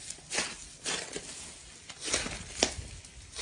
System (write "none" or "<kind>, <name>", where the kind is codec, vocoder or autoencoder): none